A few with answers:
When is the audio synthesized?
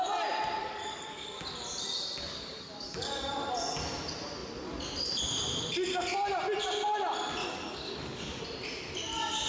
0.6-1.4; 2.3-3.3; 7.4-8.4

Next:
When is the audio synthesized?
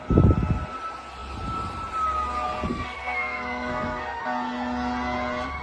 2.7-4.2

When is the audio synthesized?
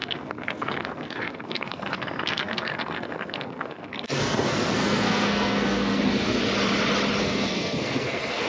0.0-6.4; 7.2-8.5